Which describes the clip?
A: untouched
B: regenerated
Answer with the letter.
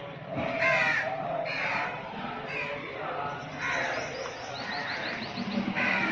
A